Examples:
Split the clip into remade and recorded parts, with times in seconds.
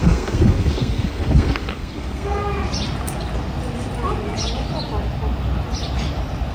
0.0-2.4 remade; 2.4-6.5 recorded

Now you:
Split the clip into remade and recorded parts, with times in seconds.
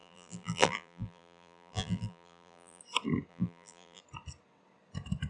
0.0-2.8 remade; 2.8-3.3 recorded; 3.3-4.0 remade; 4.0-5.3 recorded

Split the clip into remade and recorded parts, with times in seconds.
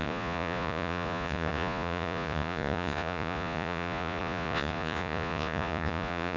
0.0-6.4 remade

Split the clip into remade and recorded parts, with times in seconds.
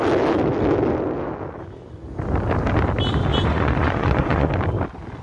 0.0-3.3 recorded; 3.3-4.5 remade; 4.5-5.2 recorded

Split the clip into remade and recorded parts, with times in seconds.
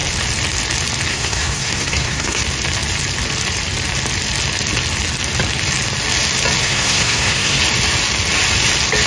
0.0-1.1 recorded; 1.1-2.4 remade; 2.4-6.6 recorded; 6.6-7.6 remade; 7.6-9.1 recorded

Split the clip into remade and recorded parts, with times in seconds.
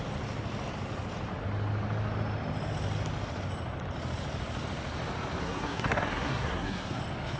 0.0-5.4 recorded; 5.4-7.0 remade; 7.0-7.4 recorded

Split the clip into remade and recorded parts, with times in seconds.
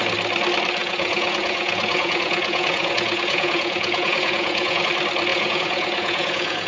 0.0-0.8 recorded; 0.8-4.8 remade; 4.8-5.3 recorded; 5.3-6.7 remade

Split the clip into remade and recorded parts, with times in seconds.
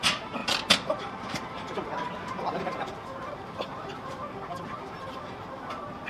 0.0-6.1 recorded